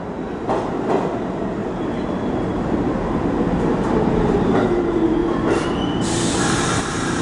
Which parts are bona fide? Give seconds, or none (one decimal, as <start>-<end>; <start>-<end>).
0.0-1.6; 4.5-5.2